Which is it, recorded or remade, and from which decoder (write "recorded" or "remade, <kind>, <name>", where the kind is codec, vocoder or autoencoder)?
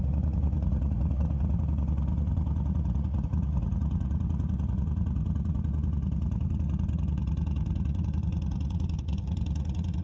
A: remade, vocoder, Vocos